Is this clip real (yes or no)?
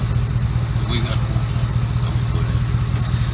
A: yes